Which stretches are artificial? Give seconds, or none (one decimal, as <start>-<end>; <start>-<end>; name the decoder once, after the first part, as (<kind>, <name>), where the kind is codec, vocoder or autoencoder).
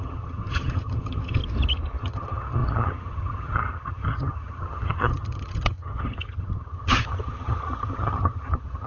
0.0-1.4 (vocoder, HiFi-GAN); 2.0-8.9